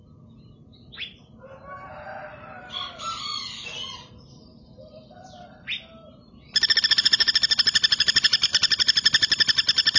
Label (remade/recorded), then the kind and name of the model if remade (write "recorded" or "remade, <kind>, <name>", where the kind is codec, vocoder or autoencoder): remade, vocoder, BigVGAN v2